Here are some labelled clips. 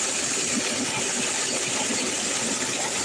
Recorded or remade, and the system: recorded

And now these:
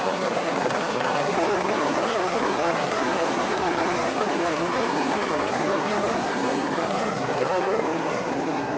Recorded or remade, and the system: remade, codec, SNAC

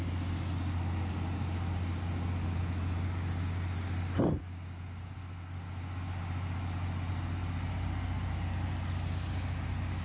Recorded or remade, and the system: recorded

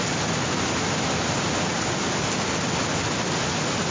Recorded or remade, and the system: recorded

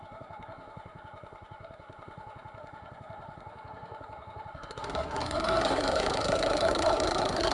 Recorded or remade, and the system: remade, codec, SNAC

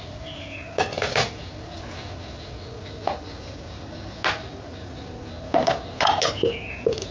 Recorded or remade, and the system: recorded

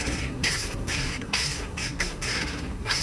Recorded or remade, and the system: remade, codec, SNAC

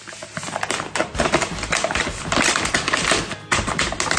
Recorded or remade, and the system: recorded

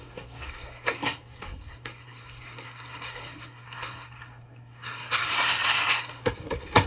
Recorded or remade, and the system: remade, codec, SNAC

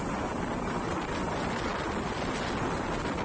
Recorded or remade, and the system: recorded